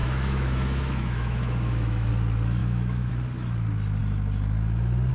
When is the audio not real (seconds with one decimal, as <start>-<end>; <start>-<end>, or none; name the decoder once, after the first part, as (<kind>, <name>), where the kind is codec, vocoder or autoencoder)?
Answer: 0.0-2.1 (autoencoder, DAC-VAE); 2.6-3.1